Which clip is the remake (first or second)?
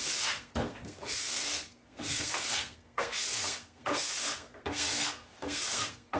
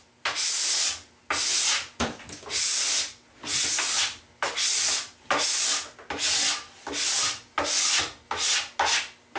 first